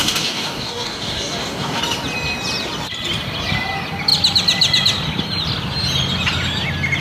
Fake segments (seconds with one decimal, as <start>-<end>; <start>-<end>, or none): 0.0-1.8